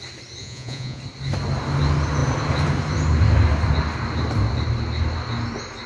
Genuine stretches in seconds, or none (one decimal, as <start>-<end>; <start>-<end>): 0.0-0.4; 1.0-5.9